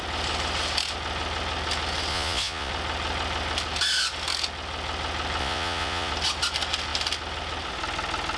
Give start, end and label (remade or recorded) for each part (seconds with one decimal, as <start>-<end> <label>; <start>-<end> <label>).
0.0-2.1 recorded; 2.1-2.7 remade; 2.7-5.4 recorded; 5.4-6.1 remade; 6.1-8.4 recorded